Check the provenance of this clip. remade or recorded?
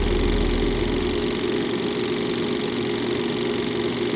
recorded